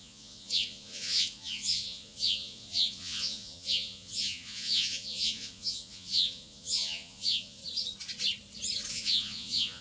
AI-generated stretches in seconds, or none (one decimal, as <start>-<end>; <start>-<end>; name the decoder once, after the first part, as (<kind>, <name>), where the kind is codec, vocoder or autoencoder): 0.0-7.6 (vocoder, Vocos); 8.9-9.8